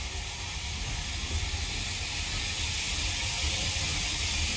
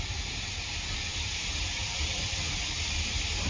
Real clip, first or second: first